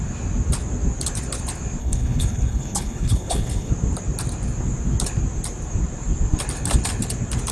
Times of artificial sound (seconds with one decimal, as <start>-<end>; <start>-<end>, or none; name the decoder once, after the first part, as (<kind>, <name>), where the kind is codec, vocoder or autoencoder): 1.8-3.7 (codec, HILCodec)